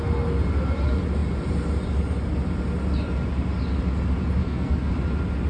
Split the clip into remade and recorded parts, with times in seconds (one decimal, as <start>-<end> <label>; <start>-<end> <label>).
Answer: 0.0-4.4 recorded; 4.4-4.9 remade; 4.9-5.5 recorded